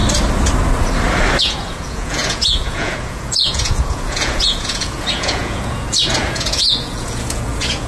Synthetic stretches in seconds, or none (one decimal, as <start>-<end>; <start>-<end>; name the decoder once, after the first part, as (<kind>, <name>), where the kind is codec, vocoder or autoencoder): 1.4-7.9 (vocoder, Vocos)